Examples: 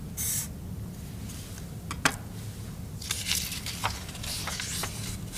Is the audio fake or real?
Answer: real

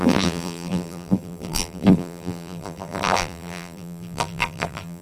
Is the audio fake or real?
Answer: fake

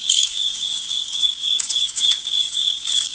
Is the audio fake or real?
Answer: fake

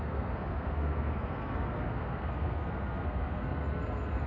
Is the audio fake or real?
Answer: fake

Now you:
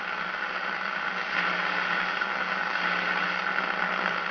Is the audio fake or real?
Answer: real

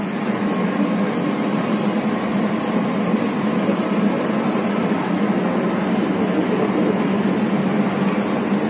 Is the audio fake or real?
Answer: real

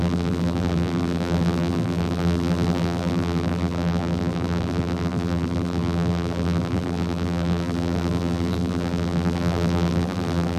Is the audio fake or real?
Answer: fake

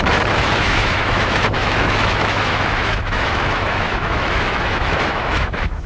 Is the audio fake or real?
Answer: fake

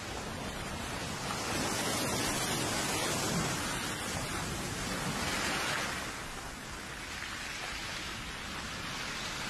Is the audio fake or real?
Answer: real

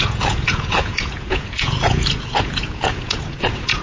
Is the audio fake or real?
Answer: fake